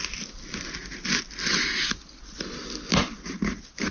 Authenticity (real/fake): real